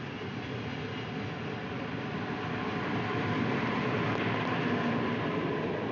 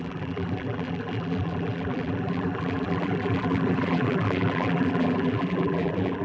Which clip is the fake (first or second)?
second